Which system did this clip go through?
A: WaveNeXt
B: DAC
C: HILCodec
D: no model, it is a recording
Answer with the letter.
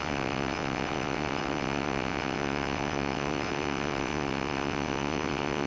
A